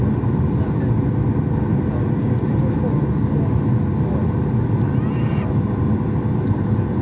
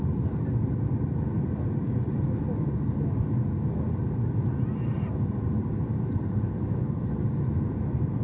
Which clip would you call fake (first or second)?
second